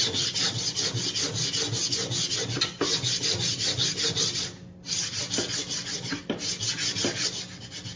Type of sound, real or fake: real